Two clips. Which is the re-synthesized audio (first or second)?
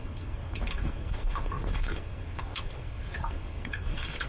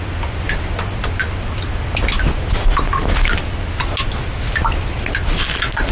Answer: first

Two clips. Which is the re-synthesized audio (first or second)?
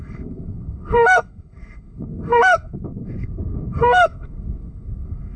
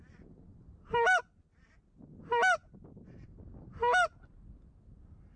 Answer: first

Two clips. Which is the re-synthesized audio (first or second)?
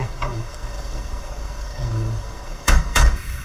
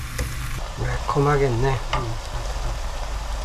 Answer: first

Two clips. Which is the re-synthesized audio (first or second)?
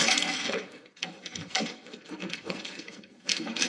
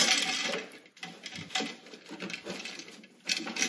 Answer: first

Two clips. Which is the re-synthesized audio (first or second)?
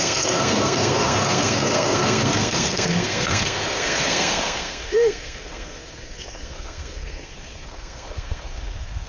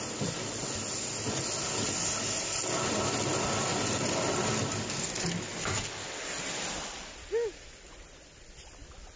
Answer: first